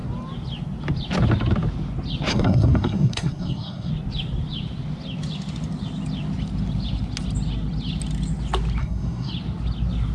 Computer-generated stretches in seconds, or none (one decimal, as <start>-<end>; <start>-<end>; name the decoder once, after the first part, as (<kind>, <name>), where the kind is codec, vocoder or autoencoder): 2.3-3.9 (codec, SNAC); 8.8-9.3